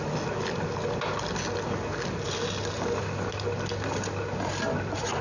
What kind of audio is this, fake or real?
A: real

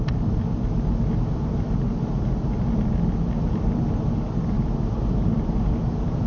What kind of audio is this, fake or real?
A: real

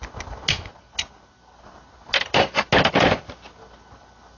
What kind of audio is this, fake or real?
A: real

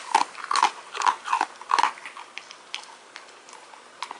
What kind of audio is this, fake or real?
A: real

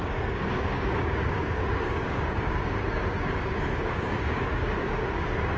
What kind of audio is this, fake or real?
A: fake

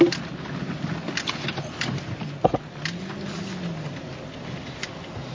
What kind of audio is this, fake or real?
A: real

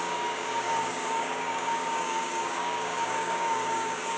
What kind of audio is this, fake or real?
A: fake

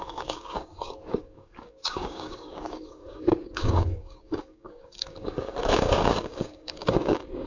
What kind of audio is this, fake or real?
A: fake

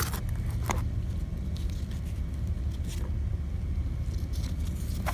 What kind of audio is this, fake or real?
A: real